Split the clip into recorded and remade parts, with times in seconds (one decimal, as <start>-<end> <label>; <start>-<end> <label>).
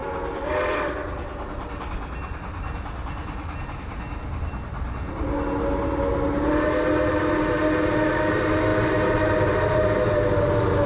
0.0-10.9 recorded